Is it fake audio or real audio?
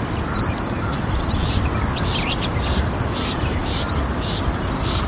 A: fake